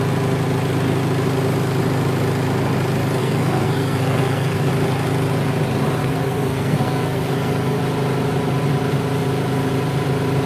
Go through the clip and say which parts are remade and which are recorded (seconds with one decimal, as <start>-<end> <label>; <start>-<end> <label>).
0.0-3.2 recorded; 3.2-4.7 remade; 4.7-6.0 recorded; 6.0-7.8 remade; 7.8-10.5 recorded